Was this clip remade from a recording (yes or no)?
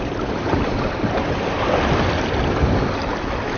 no